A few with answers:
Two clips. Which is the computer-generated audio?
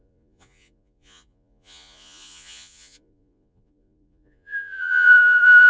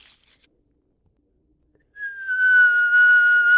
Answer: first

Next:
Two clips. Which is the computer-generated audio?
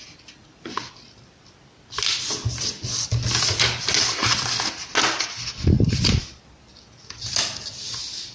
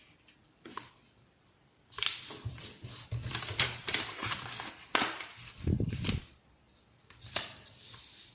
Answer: second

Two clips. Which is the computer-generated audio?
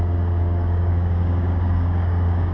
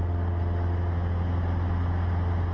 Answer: first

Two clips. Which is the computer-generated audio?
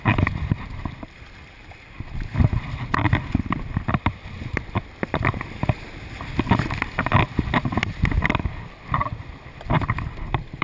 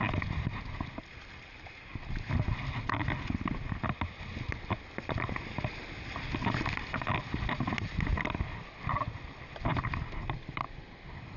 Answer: first